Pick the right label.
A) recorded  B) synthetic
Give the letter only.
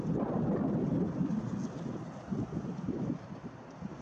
A